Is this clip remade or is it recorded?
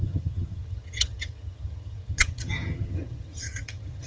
remade